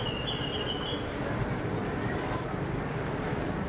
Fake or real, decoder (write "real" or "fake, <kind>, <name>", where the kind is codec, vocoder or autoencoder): real